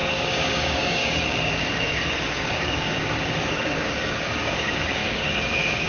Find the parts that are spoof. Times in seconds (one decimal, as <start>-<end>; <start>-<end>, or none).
0.0-5.9